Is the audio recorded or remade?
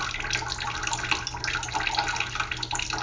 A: recorded